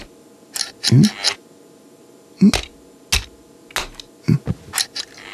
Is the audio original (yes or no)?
yes